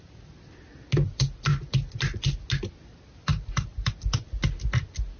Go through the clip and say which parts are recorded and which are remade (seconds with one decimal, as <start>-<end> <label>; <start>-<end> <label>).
0.0-3.3 recorded; 3.3-3.9 remade; 3.9-5.2 recorded